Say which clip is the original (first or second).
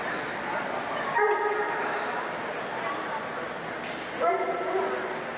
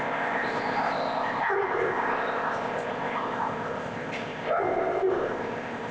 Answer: first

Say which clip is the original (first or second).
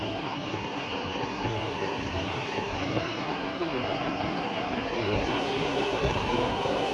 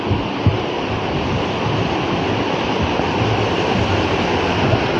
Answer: second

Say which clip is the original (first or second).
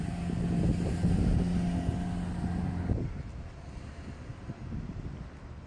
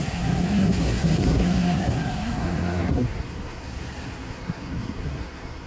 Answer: first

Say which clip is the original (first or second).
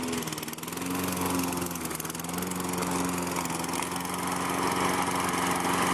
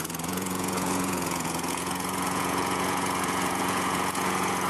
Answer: first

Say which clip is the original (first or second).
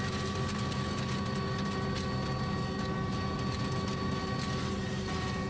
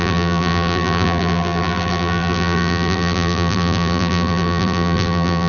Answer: first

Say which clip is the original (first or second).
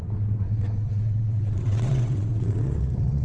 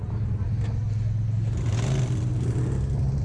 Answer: second